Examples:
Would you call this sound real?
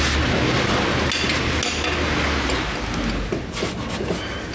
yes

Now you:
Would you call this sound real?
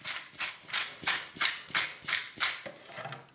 yes